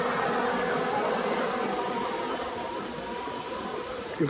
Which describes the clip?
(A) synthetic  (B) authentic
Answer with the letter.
B